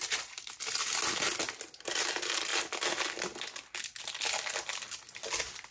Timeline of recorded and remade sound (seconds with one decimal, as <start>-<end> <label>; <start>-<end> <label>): 0.0-0.6 remade; 0.6-5.7 recorded